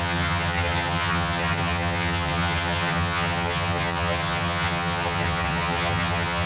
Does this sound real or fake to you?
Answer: fake